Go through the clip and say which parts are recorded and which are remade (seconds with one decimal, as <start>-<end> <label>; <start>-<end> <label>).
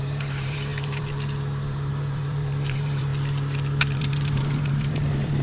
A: 0.0-3.1 remade; 3.1-3.8 recorded; 3.8-5.4 remade